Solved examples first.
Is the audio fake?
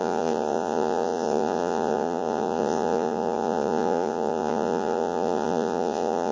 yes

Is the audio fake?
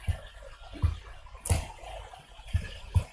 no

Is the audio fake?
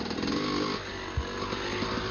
no